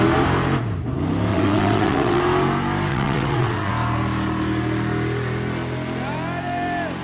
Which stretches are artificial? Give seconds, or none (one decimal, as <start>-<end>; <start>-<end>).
1.3-2.2; 2.9-3.7

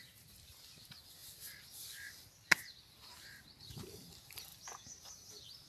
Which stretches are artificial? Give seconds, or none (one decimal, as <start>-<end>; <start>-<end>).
4.5-5.3